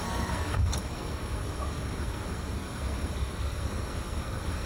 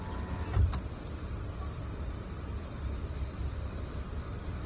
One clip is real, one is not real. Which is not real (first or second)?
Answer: first